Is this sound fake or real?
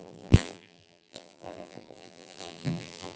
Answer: fake